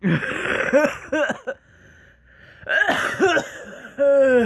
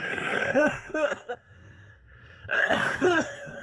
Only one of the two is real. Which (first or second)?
first